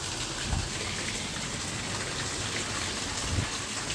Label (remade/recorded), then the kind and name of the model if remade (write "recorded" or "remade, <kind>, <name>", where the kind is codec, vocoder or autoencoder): recorded